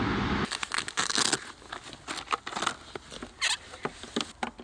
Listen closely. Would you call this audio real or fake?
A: real